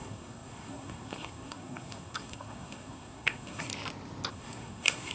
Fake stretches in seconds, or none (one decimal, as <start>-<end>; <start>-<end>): 0.0-3.7; 4.3-5.1